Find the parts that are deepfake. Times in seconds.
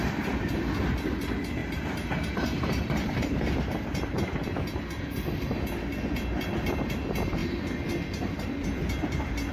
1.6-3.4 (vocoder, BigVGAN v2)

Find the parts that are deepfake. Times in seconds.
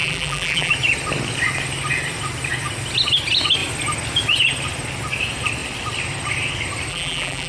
0.0-0.7 (vocoder, BigVGAN v2); 6.9-7.5